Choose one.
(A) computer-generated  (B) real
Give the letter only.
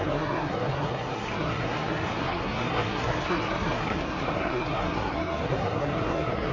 A